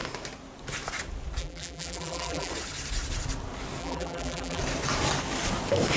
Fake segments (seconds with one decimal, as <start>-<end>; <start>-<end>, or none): 1.4-2.5; 3.8-4.6